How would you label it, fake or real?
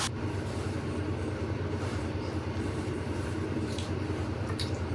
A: fake